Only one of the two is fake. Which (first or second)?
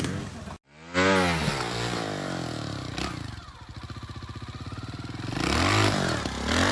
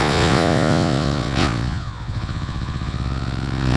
second